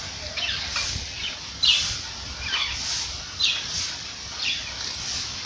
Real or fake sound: real